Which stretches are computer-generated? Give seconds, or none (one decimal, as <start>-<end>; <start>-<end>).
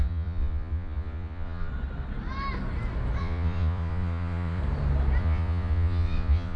0.0-1.7; 3.2-4.6; 5.2-6.6